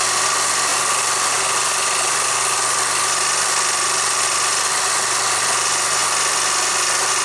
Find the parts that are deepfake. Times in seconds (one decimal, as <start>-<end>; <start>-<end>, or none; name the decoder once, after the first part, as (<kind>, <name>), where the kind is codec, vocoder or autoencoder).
none